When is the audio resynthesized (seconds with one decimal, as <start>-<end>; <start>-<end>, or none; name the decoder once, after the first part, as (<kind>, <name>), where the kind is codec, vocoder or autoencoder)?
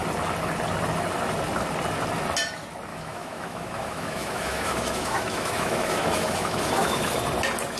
2.9-7.1 (autoencoder, DAC-VAE)